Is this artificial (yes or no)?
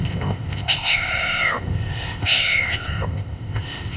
yes